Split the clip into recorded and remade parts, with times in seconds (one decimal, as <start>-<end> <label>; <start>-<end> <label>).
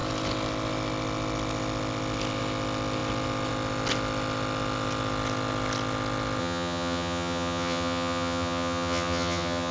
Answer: 0.0-6.4 recorded; 6.4-9.7 remade